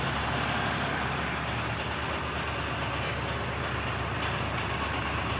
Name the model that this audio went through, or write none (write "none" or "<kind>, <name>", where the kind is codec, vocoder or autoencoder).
none